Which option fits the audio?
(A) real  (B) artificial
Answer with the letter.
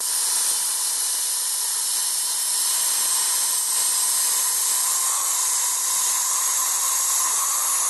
A